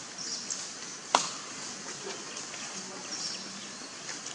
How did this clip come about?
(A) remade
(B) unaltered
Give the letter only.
B